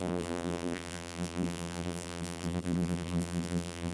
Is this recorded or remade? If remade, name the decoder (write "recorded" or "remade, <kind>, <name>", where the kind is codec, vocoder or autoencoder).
remade, vocoder, BigVGAN v2